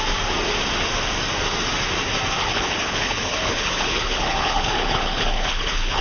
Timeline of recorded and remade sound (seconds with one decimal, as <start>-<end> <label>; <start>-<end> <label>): 0.0-2.4 recorded; 2.4-6.0 remade